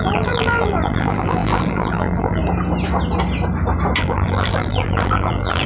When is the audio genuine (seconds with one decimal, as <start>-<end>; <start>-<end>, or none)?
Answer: 2.4-4.0